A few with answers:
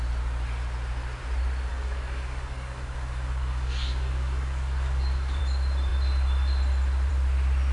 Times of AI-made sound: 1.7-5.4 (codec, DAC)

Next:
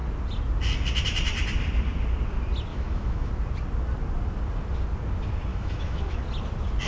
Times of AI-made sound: 2.7-3.3 (autoencoder, DAC-VAE); 5.5-6.2

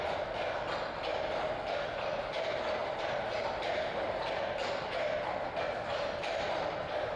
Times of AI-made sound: 2.8-5.4 (vocoder, BigVGAN v2)